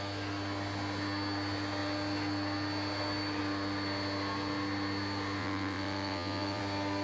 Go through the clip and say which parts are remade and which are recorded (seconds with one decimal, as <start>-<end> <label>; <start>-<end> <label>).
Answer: 0.0-5.4 recorded; 5.4-6.6 remade; 6.6-7.0 recorded